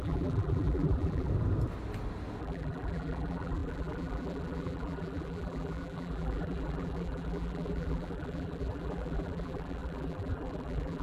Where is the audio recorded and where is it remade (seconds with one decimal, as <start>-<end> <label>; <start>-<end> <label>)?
0.0-1.3 remade; 1.3-2.4 recorded; 2.4-11.0 remade

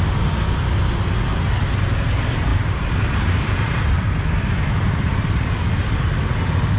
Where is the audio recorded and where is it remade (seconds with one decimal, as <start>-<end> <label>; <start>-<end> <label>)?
0.0-2.5 recorded; 2.5-4.0 remade; 4.0-6.8 recorded

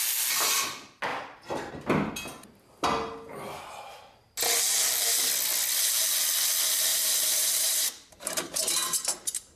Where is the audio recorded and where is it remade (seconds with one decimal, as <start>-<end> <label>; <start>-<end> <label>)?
0.0-1.1 recorded; 1.1-1.7 remade; 1.7-6.9 recorded; 6.9-9.6 remade